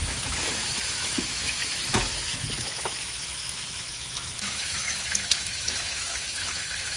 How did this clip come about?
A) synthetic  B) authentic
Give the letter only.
A